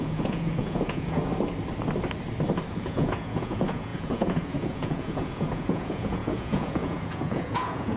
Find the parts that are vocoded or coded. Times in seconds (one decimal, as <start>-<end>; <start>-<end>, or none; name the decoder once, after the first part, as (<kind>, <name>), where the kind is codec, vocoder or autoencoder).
0.0-1.3 (vocoder, Vocos); 2.7-8.0